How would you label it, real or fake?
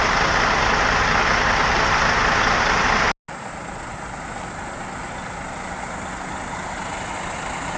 real